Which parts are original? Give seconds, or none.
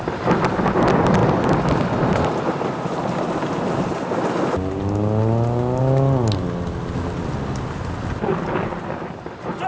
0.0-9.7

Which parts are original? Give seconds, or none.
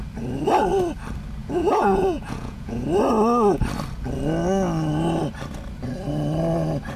0.0-1.4; 2.8-7.0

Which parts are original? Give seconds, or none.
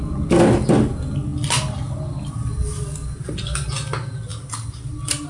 0.0-5.3